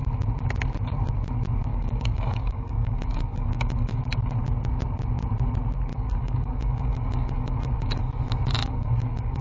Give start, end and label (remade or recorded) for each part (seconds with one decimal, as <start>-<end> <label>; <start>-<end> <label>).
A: 0.0-1.7 recorded; 1.7-4.0 remade; 4.0-5.9 recorded; 5.9-8.0 remade; 8.0-8.6 recorded; 8.6-9.4 remade